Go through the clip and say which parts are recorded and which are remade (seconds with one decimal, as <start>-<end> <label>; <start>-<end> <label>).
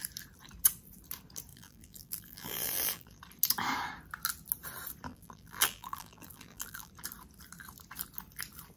0.0-1.5 recorded; 1.5-3.2 remade; 3.2-5.1 recorded; 5.1-6.9 remade; 6.9-8.8 recorded